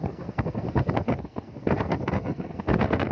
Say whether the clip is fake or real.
fake